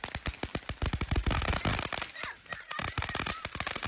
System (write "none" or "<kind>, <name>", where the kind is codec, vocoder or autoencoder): none